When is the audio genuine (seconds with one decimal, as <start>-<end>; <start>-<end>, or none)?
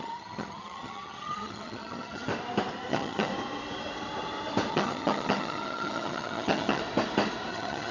2.3-2.9; 3.3-4.7; 6.8-7.5